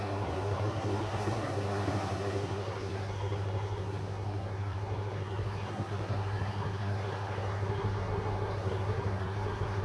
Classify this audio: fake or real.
fake